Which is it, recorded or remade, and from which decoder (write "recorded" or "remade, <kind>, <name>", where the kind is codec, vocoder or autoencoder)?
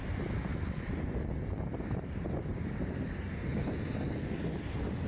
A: recorded